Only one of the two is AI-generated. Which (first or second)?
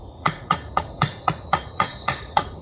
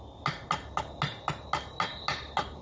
first